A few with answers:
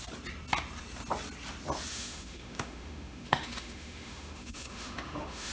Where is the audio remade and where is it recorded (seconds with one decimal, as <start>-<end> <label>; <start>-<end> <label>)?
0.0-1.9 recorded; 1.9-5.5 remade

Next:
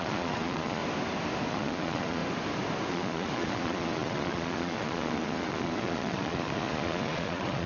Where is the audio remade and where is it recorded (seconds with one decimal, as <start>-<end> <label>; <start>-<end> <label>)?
0.0-0.8 remade; 0.8-1.5 recorded; 1.5-2.2 remade; 2.2-2.9 recorded; 2.9-7.7 remade

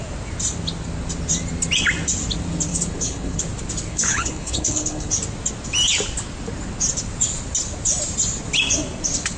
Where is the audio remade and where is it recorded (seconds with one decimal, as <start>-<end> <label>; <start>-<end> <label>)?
0.0-2.7 recorded; 2.7-3.4 remade; 3.4-3.9 recorded; 3.9-5.1 remade; 5.1-9.4 recorded